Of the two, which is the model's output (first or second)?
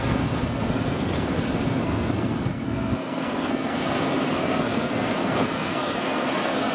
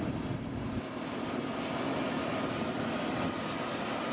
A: first